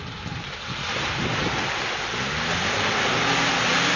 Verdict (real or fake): real